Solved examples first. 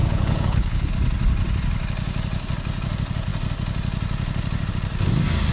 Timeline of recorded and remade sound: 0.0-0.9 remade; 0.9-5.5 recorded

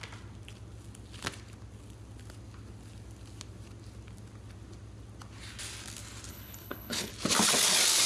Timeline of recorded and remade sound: 0.0-6.3 recorded; 6.3-7.1 remade; 7.1-8.1 recorded